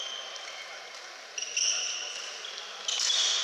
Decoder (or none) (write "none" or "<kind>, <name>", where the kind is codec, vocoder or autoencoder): none